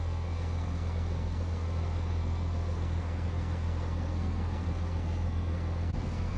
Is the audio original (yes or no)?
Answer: no